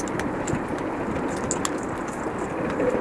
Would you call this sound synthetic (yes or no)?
no